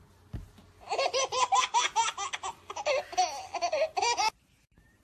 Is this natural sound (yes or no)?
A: yes